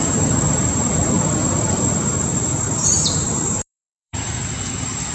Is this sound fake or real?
fake